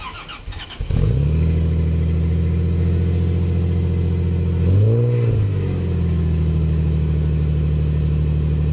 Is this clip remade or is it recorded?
recorded